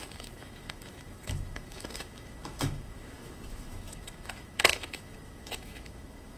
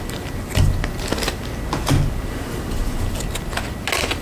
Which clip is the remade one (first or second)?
first